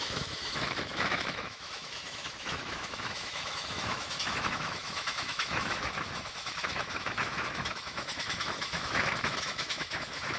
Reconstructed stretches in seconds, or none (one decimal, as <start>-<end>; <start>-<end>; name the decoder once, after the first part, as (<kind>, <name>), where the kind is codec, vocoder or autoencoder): 0.0-10.4 (autoencoder, DAC-VAE)